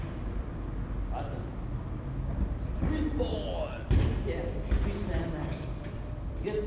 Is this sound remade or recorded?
remade